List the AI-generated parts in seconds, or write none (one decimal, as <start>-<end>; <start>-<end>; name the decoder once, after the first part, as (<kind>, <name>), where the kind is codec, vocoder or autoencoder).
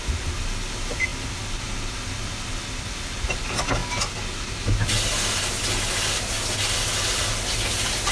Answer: none